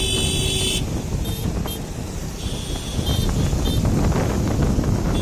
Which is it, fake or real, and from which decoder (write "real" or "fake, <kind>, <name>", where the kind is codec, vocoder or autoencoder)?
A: real